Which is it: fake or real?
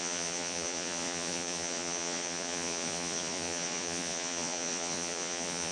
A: fake